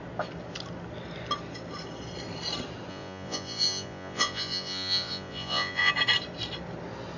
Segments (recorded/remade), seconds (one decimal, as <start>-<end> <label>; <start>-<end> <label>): 0.0-2.9 recorded; 2.9-5.9 remade; 5.9-7.2 recorded